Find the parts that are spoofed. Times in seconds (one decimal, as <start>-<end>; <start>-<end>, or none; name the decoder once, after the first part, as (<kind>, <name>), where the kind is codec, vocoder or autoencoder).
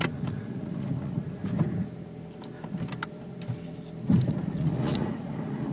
0.0-1.4 (vocoder, Vocos); 4.3-5.7